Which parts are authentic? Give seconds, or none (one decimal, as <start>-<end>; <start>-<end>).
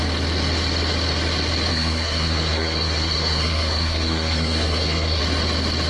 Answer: 0.0-1.7; 5.2-5.9